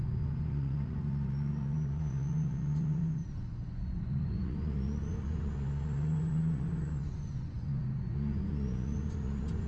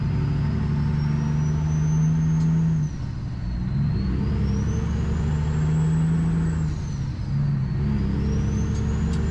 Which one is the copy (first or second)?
first